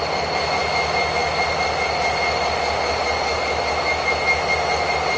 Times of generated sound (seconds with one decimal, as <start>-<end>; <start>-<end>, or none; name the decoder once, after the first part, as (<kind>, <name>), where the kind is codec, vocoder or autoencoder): none